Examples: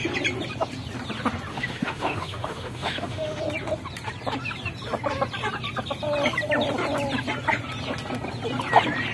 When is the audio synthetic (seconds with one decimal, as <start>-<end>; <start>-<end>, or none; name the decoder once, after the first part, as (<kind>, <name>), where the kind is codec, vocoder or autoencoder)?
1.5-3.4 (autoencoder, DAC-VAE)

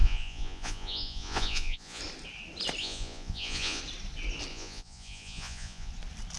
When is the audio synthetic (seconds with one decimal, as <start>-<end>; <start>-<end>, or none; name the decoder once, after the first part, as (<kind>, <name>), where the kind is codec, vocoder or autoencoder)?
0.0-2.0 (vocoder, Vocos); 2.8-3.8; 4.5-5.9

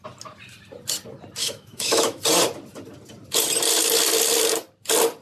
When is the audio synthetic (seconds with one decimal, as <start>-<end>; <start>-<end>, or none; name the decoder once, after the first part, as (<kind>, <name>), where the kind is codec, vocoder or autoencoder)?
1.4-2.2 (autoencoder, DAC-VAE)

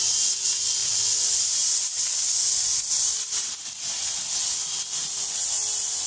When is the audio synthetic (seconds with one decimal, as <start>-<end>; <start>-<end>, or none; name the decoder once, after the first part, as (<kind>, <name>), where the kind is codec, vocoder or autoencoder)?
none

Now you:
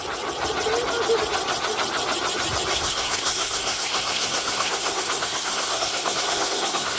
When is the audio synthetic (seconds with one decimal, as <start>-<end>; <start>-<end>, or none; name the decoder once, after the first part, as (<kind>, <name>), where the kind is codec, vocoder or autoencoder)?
2.7-7.0 (codec, SNAC)

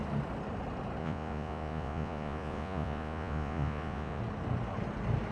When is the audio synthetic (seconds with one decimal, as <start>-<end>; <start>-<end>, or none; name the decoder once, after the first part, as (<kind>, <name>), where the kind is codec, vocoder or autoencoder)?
1.0-4.2 (vocoder, Vocos)

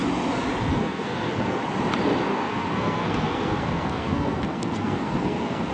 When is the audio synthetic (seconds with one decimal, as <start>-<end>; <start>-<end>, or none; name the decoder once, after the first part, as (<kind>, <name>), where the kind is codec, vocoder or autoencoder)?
0.7-1.6 (codec, SNAC); 2.3-5.7